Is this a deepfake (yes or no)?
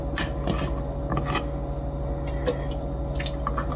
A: no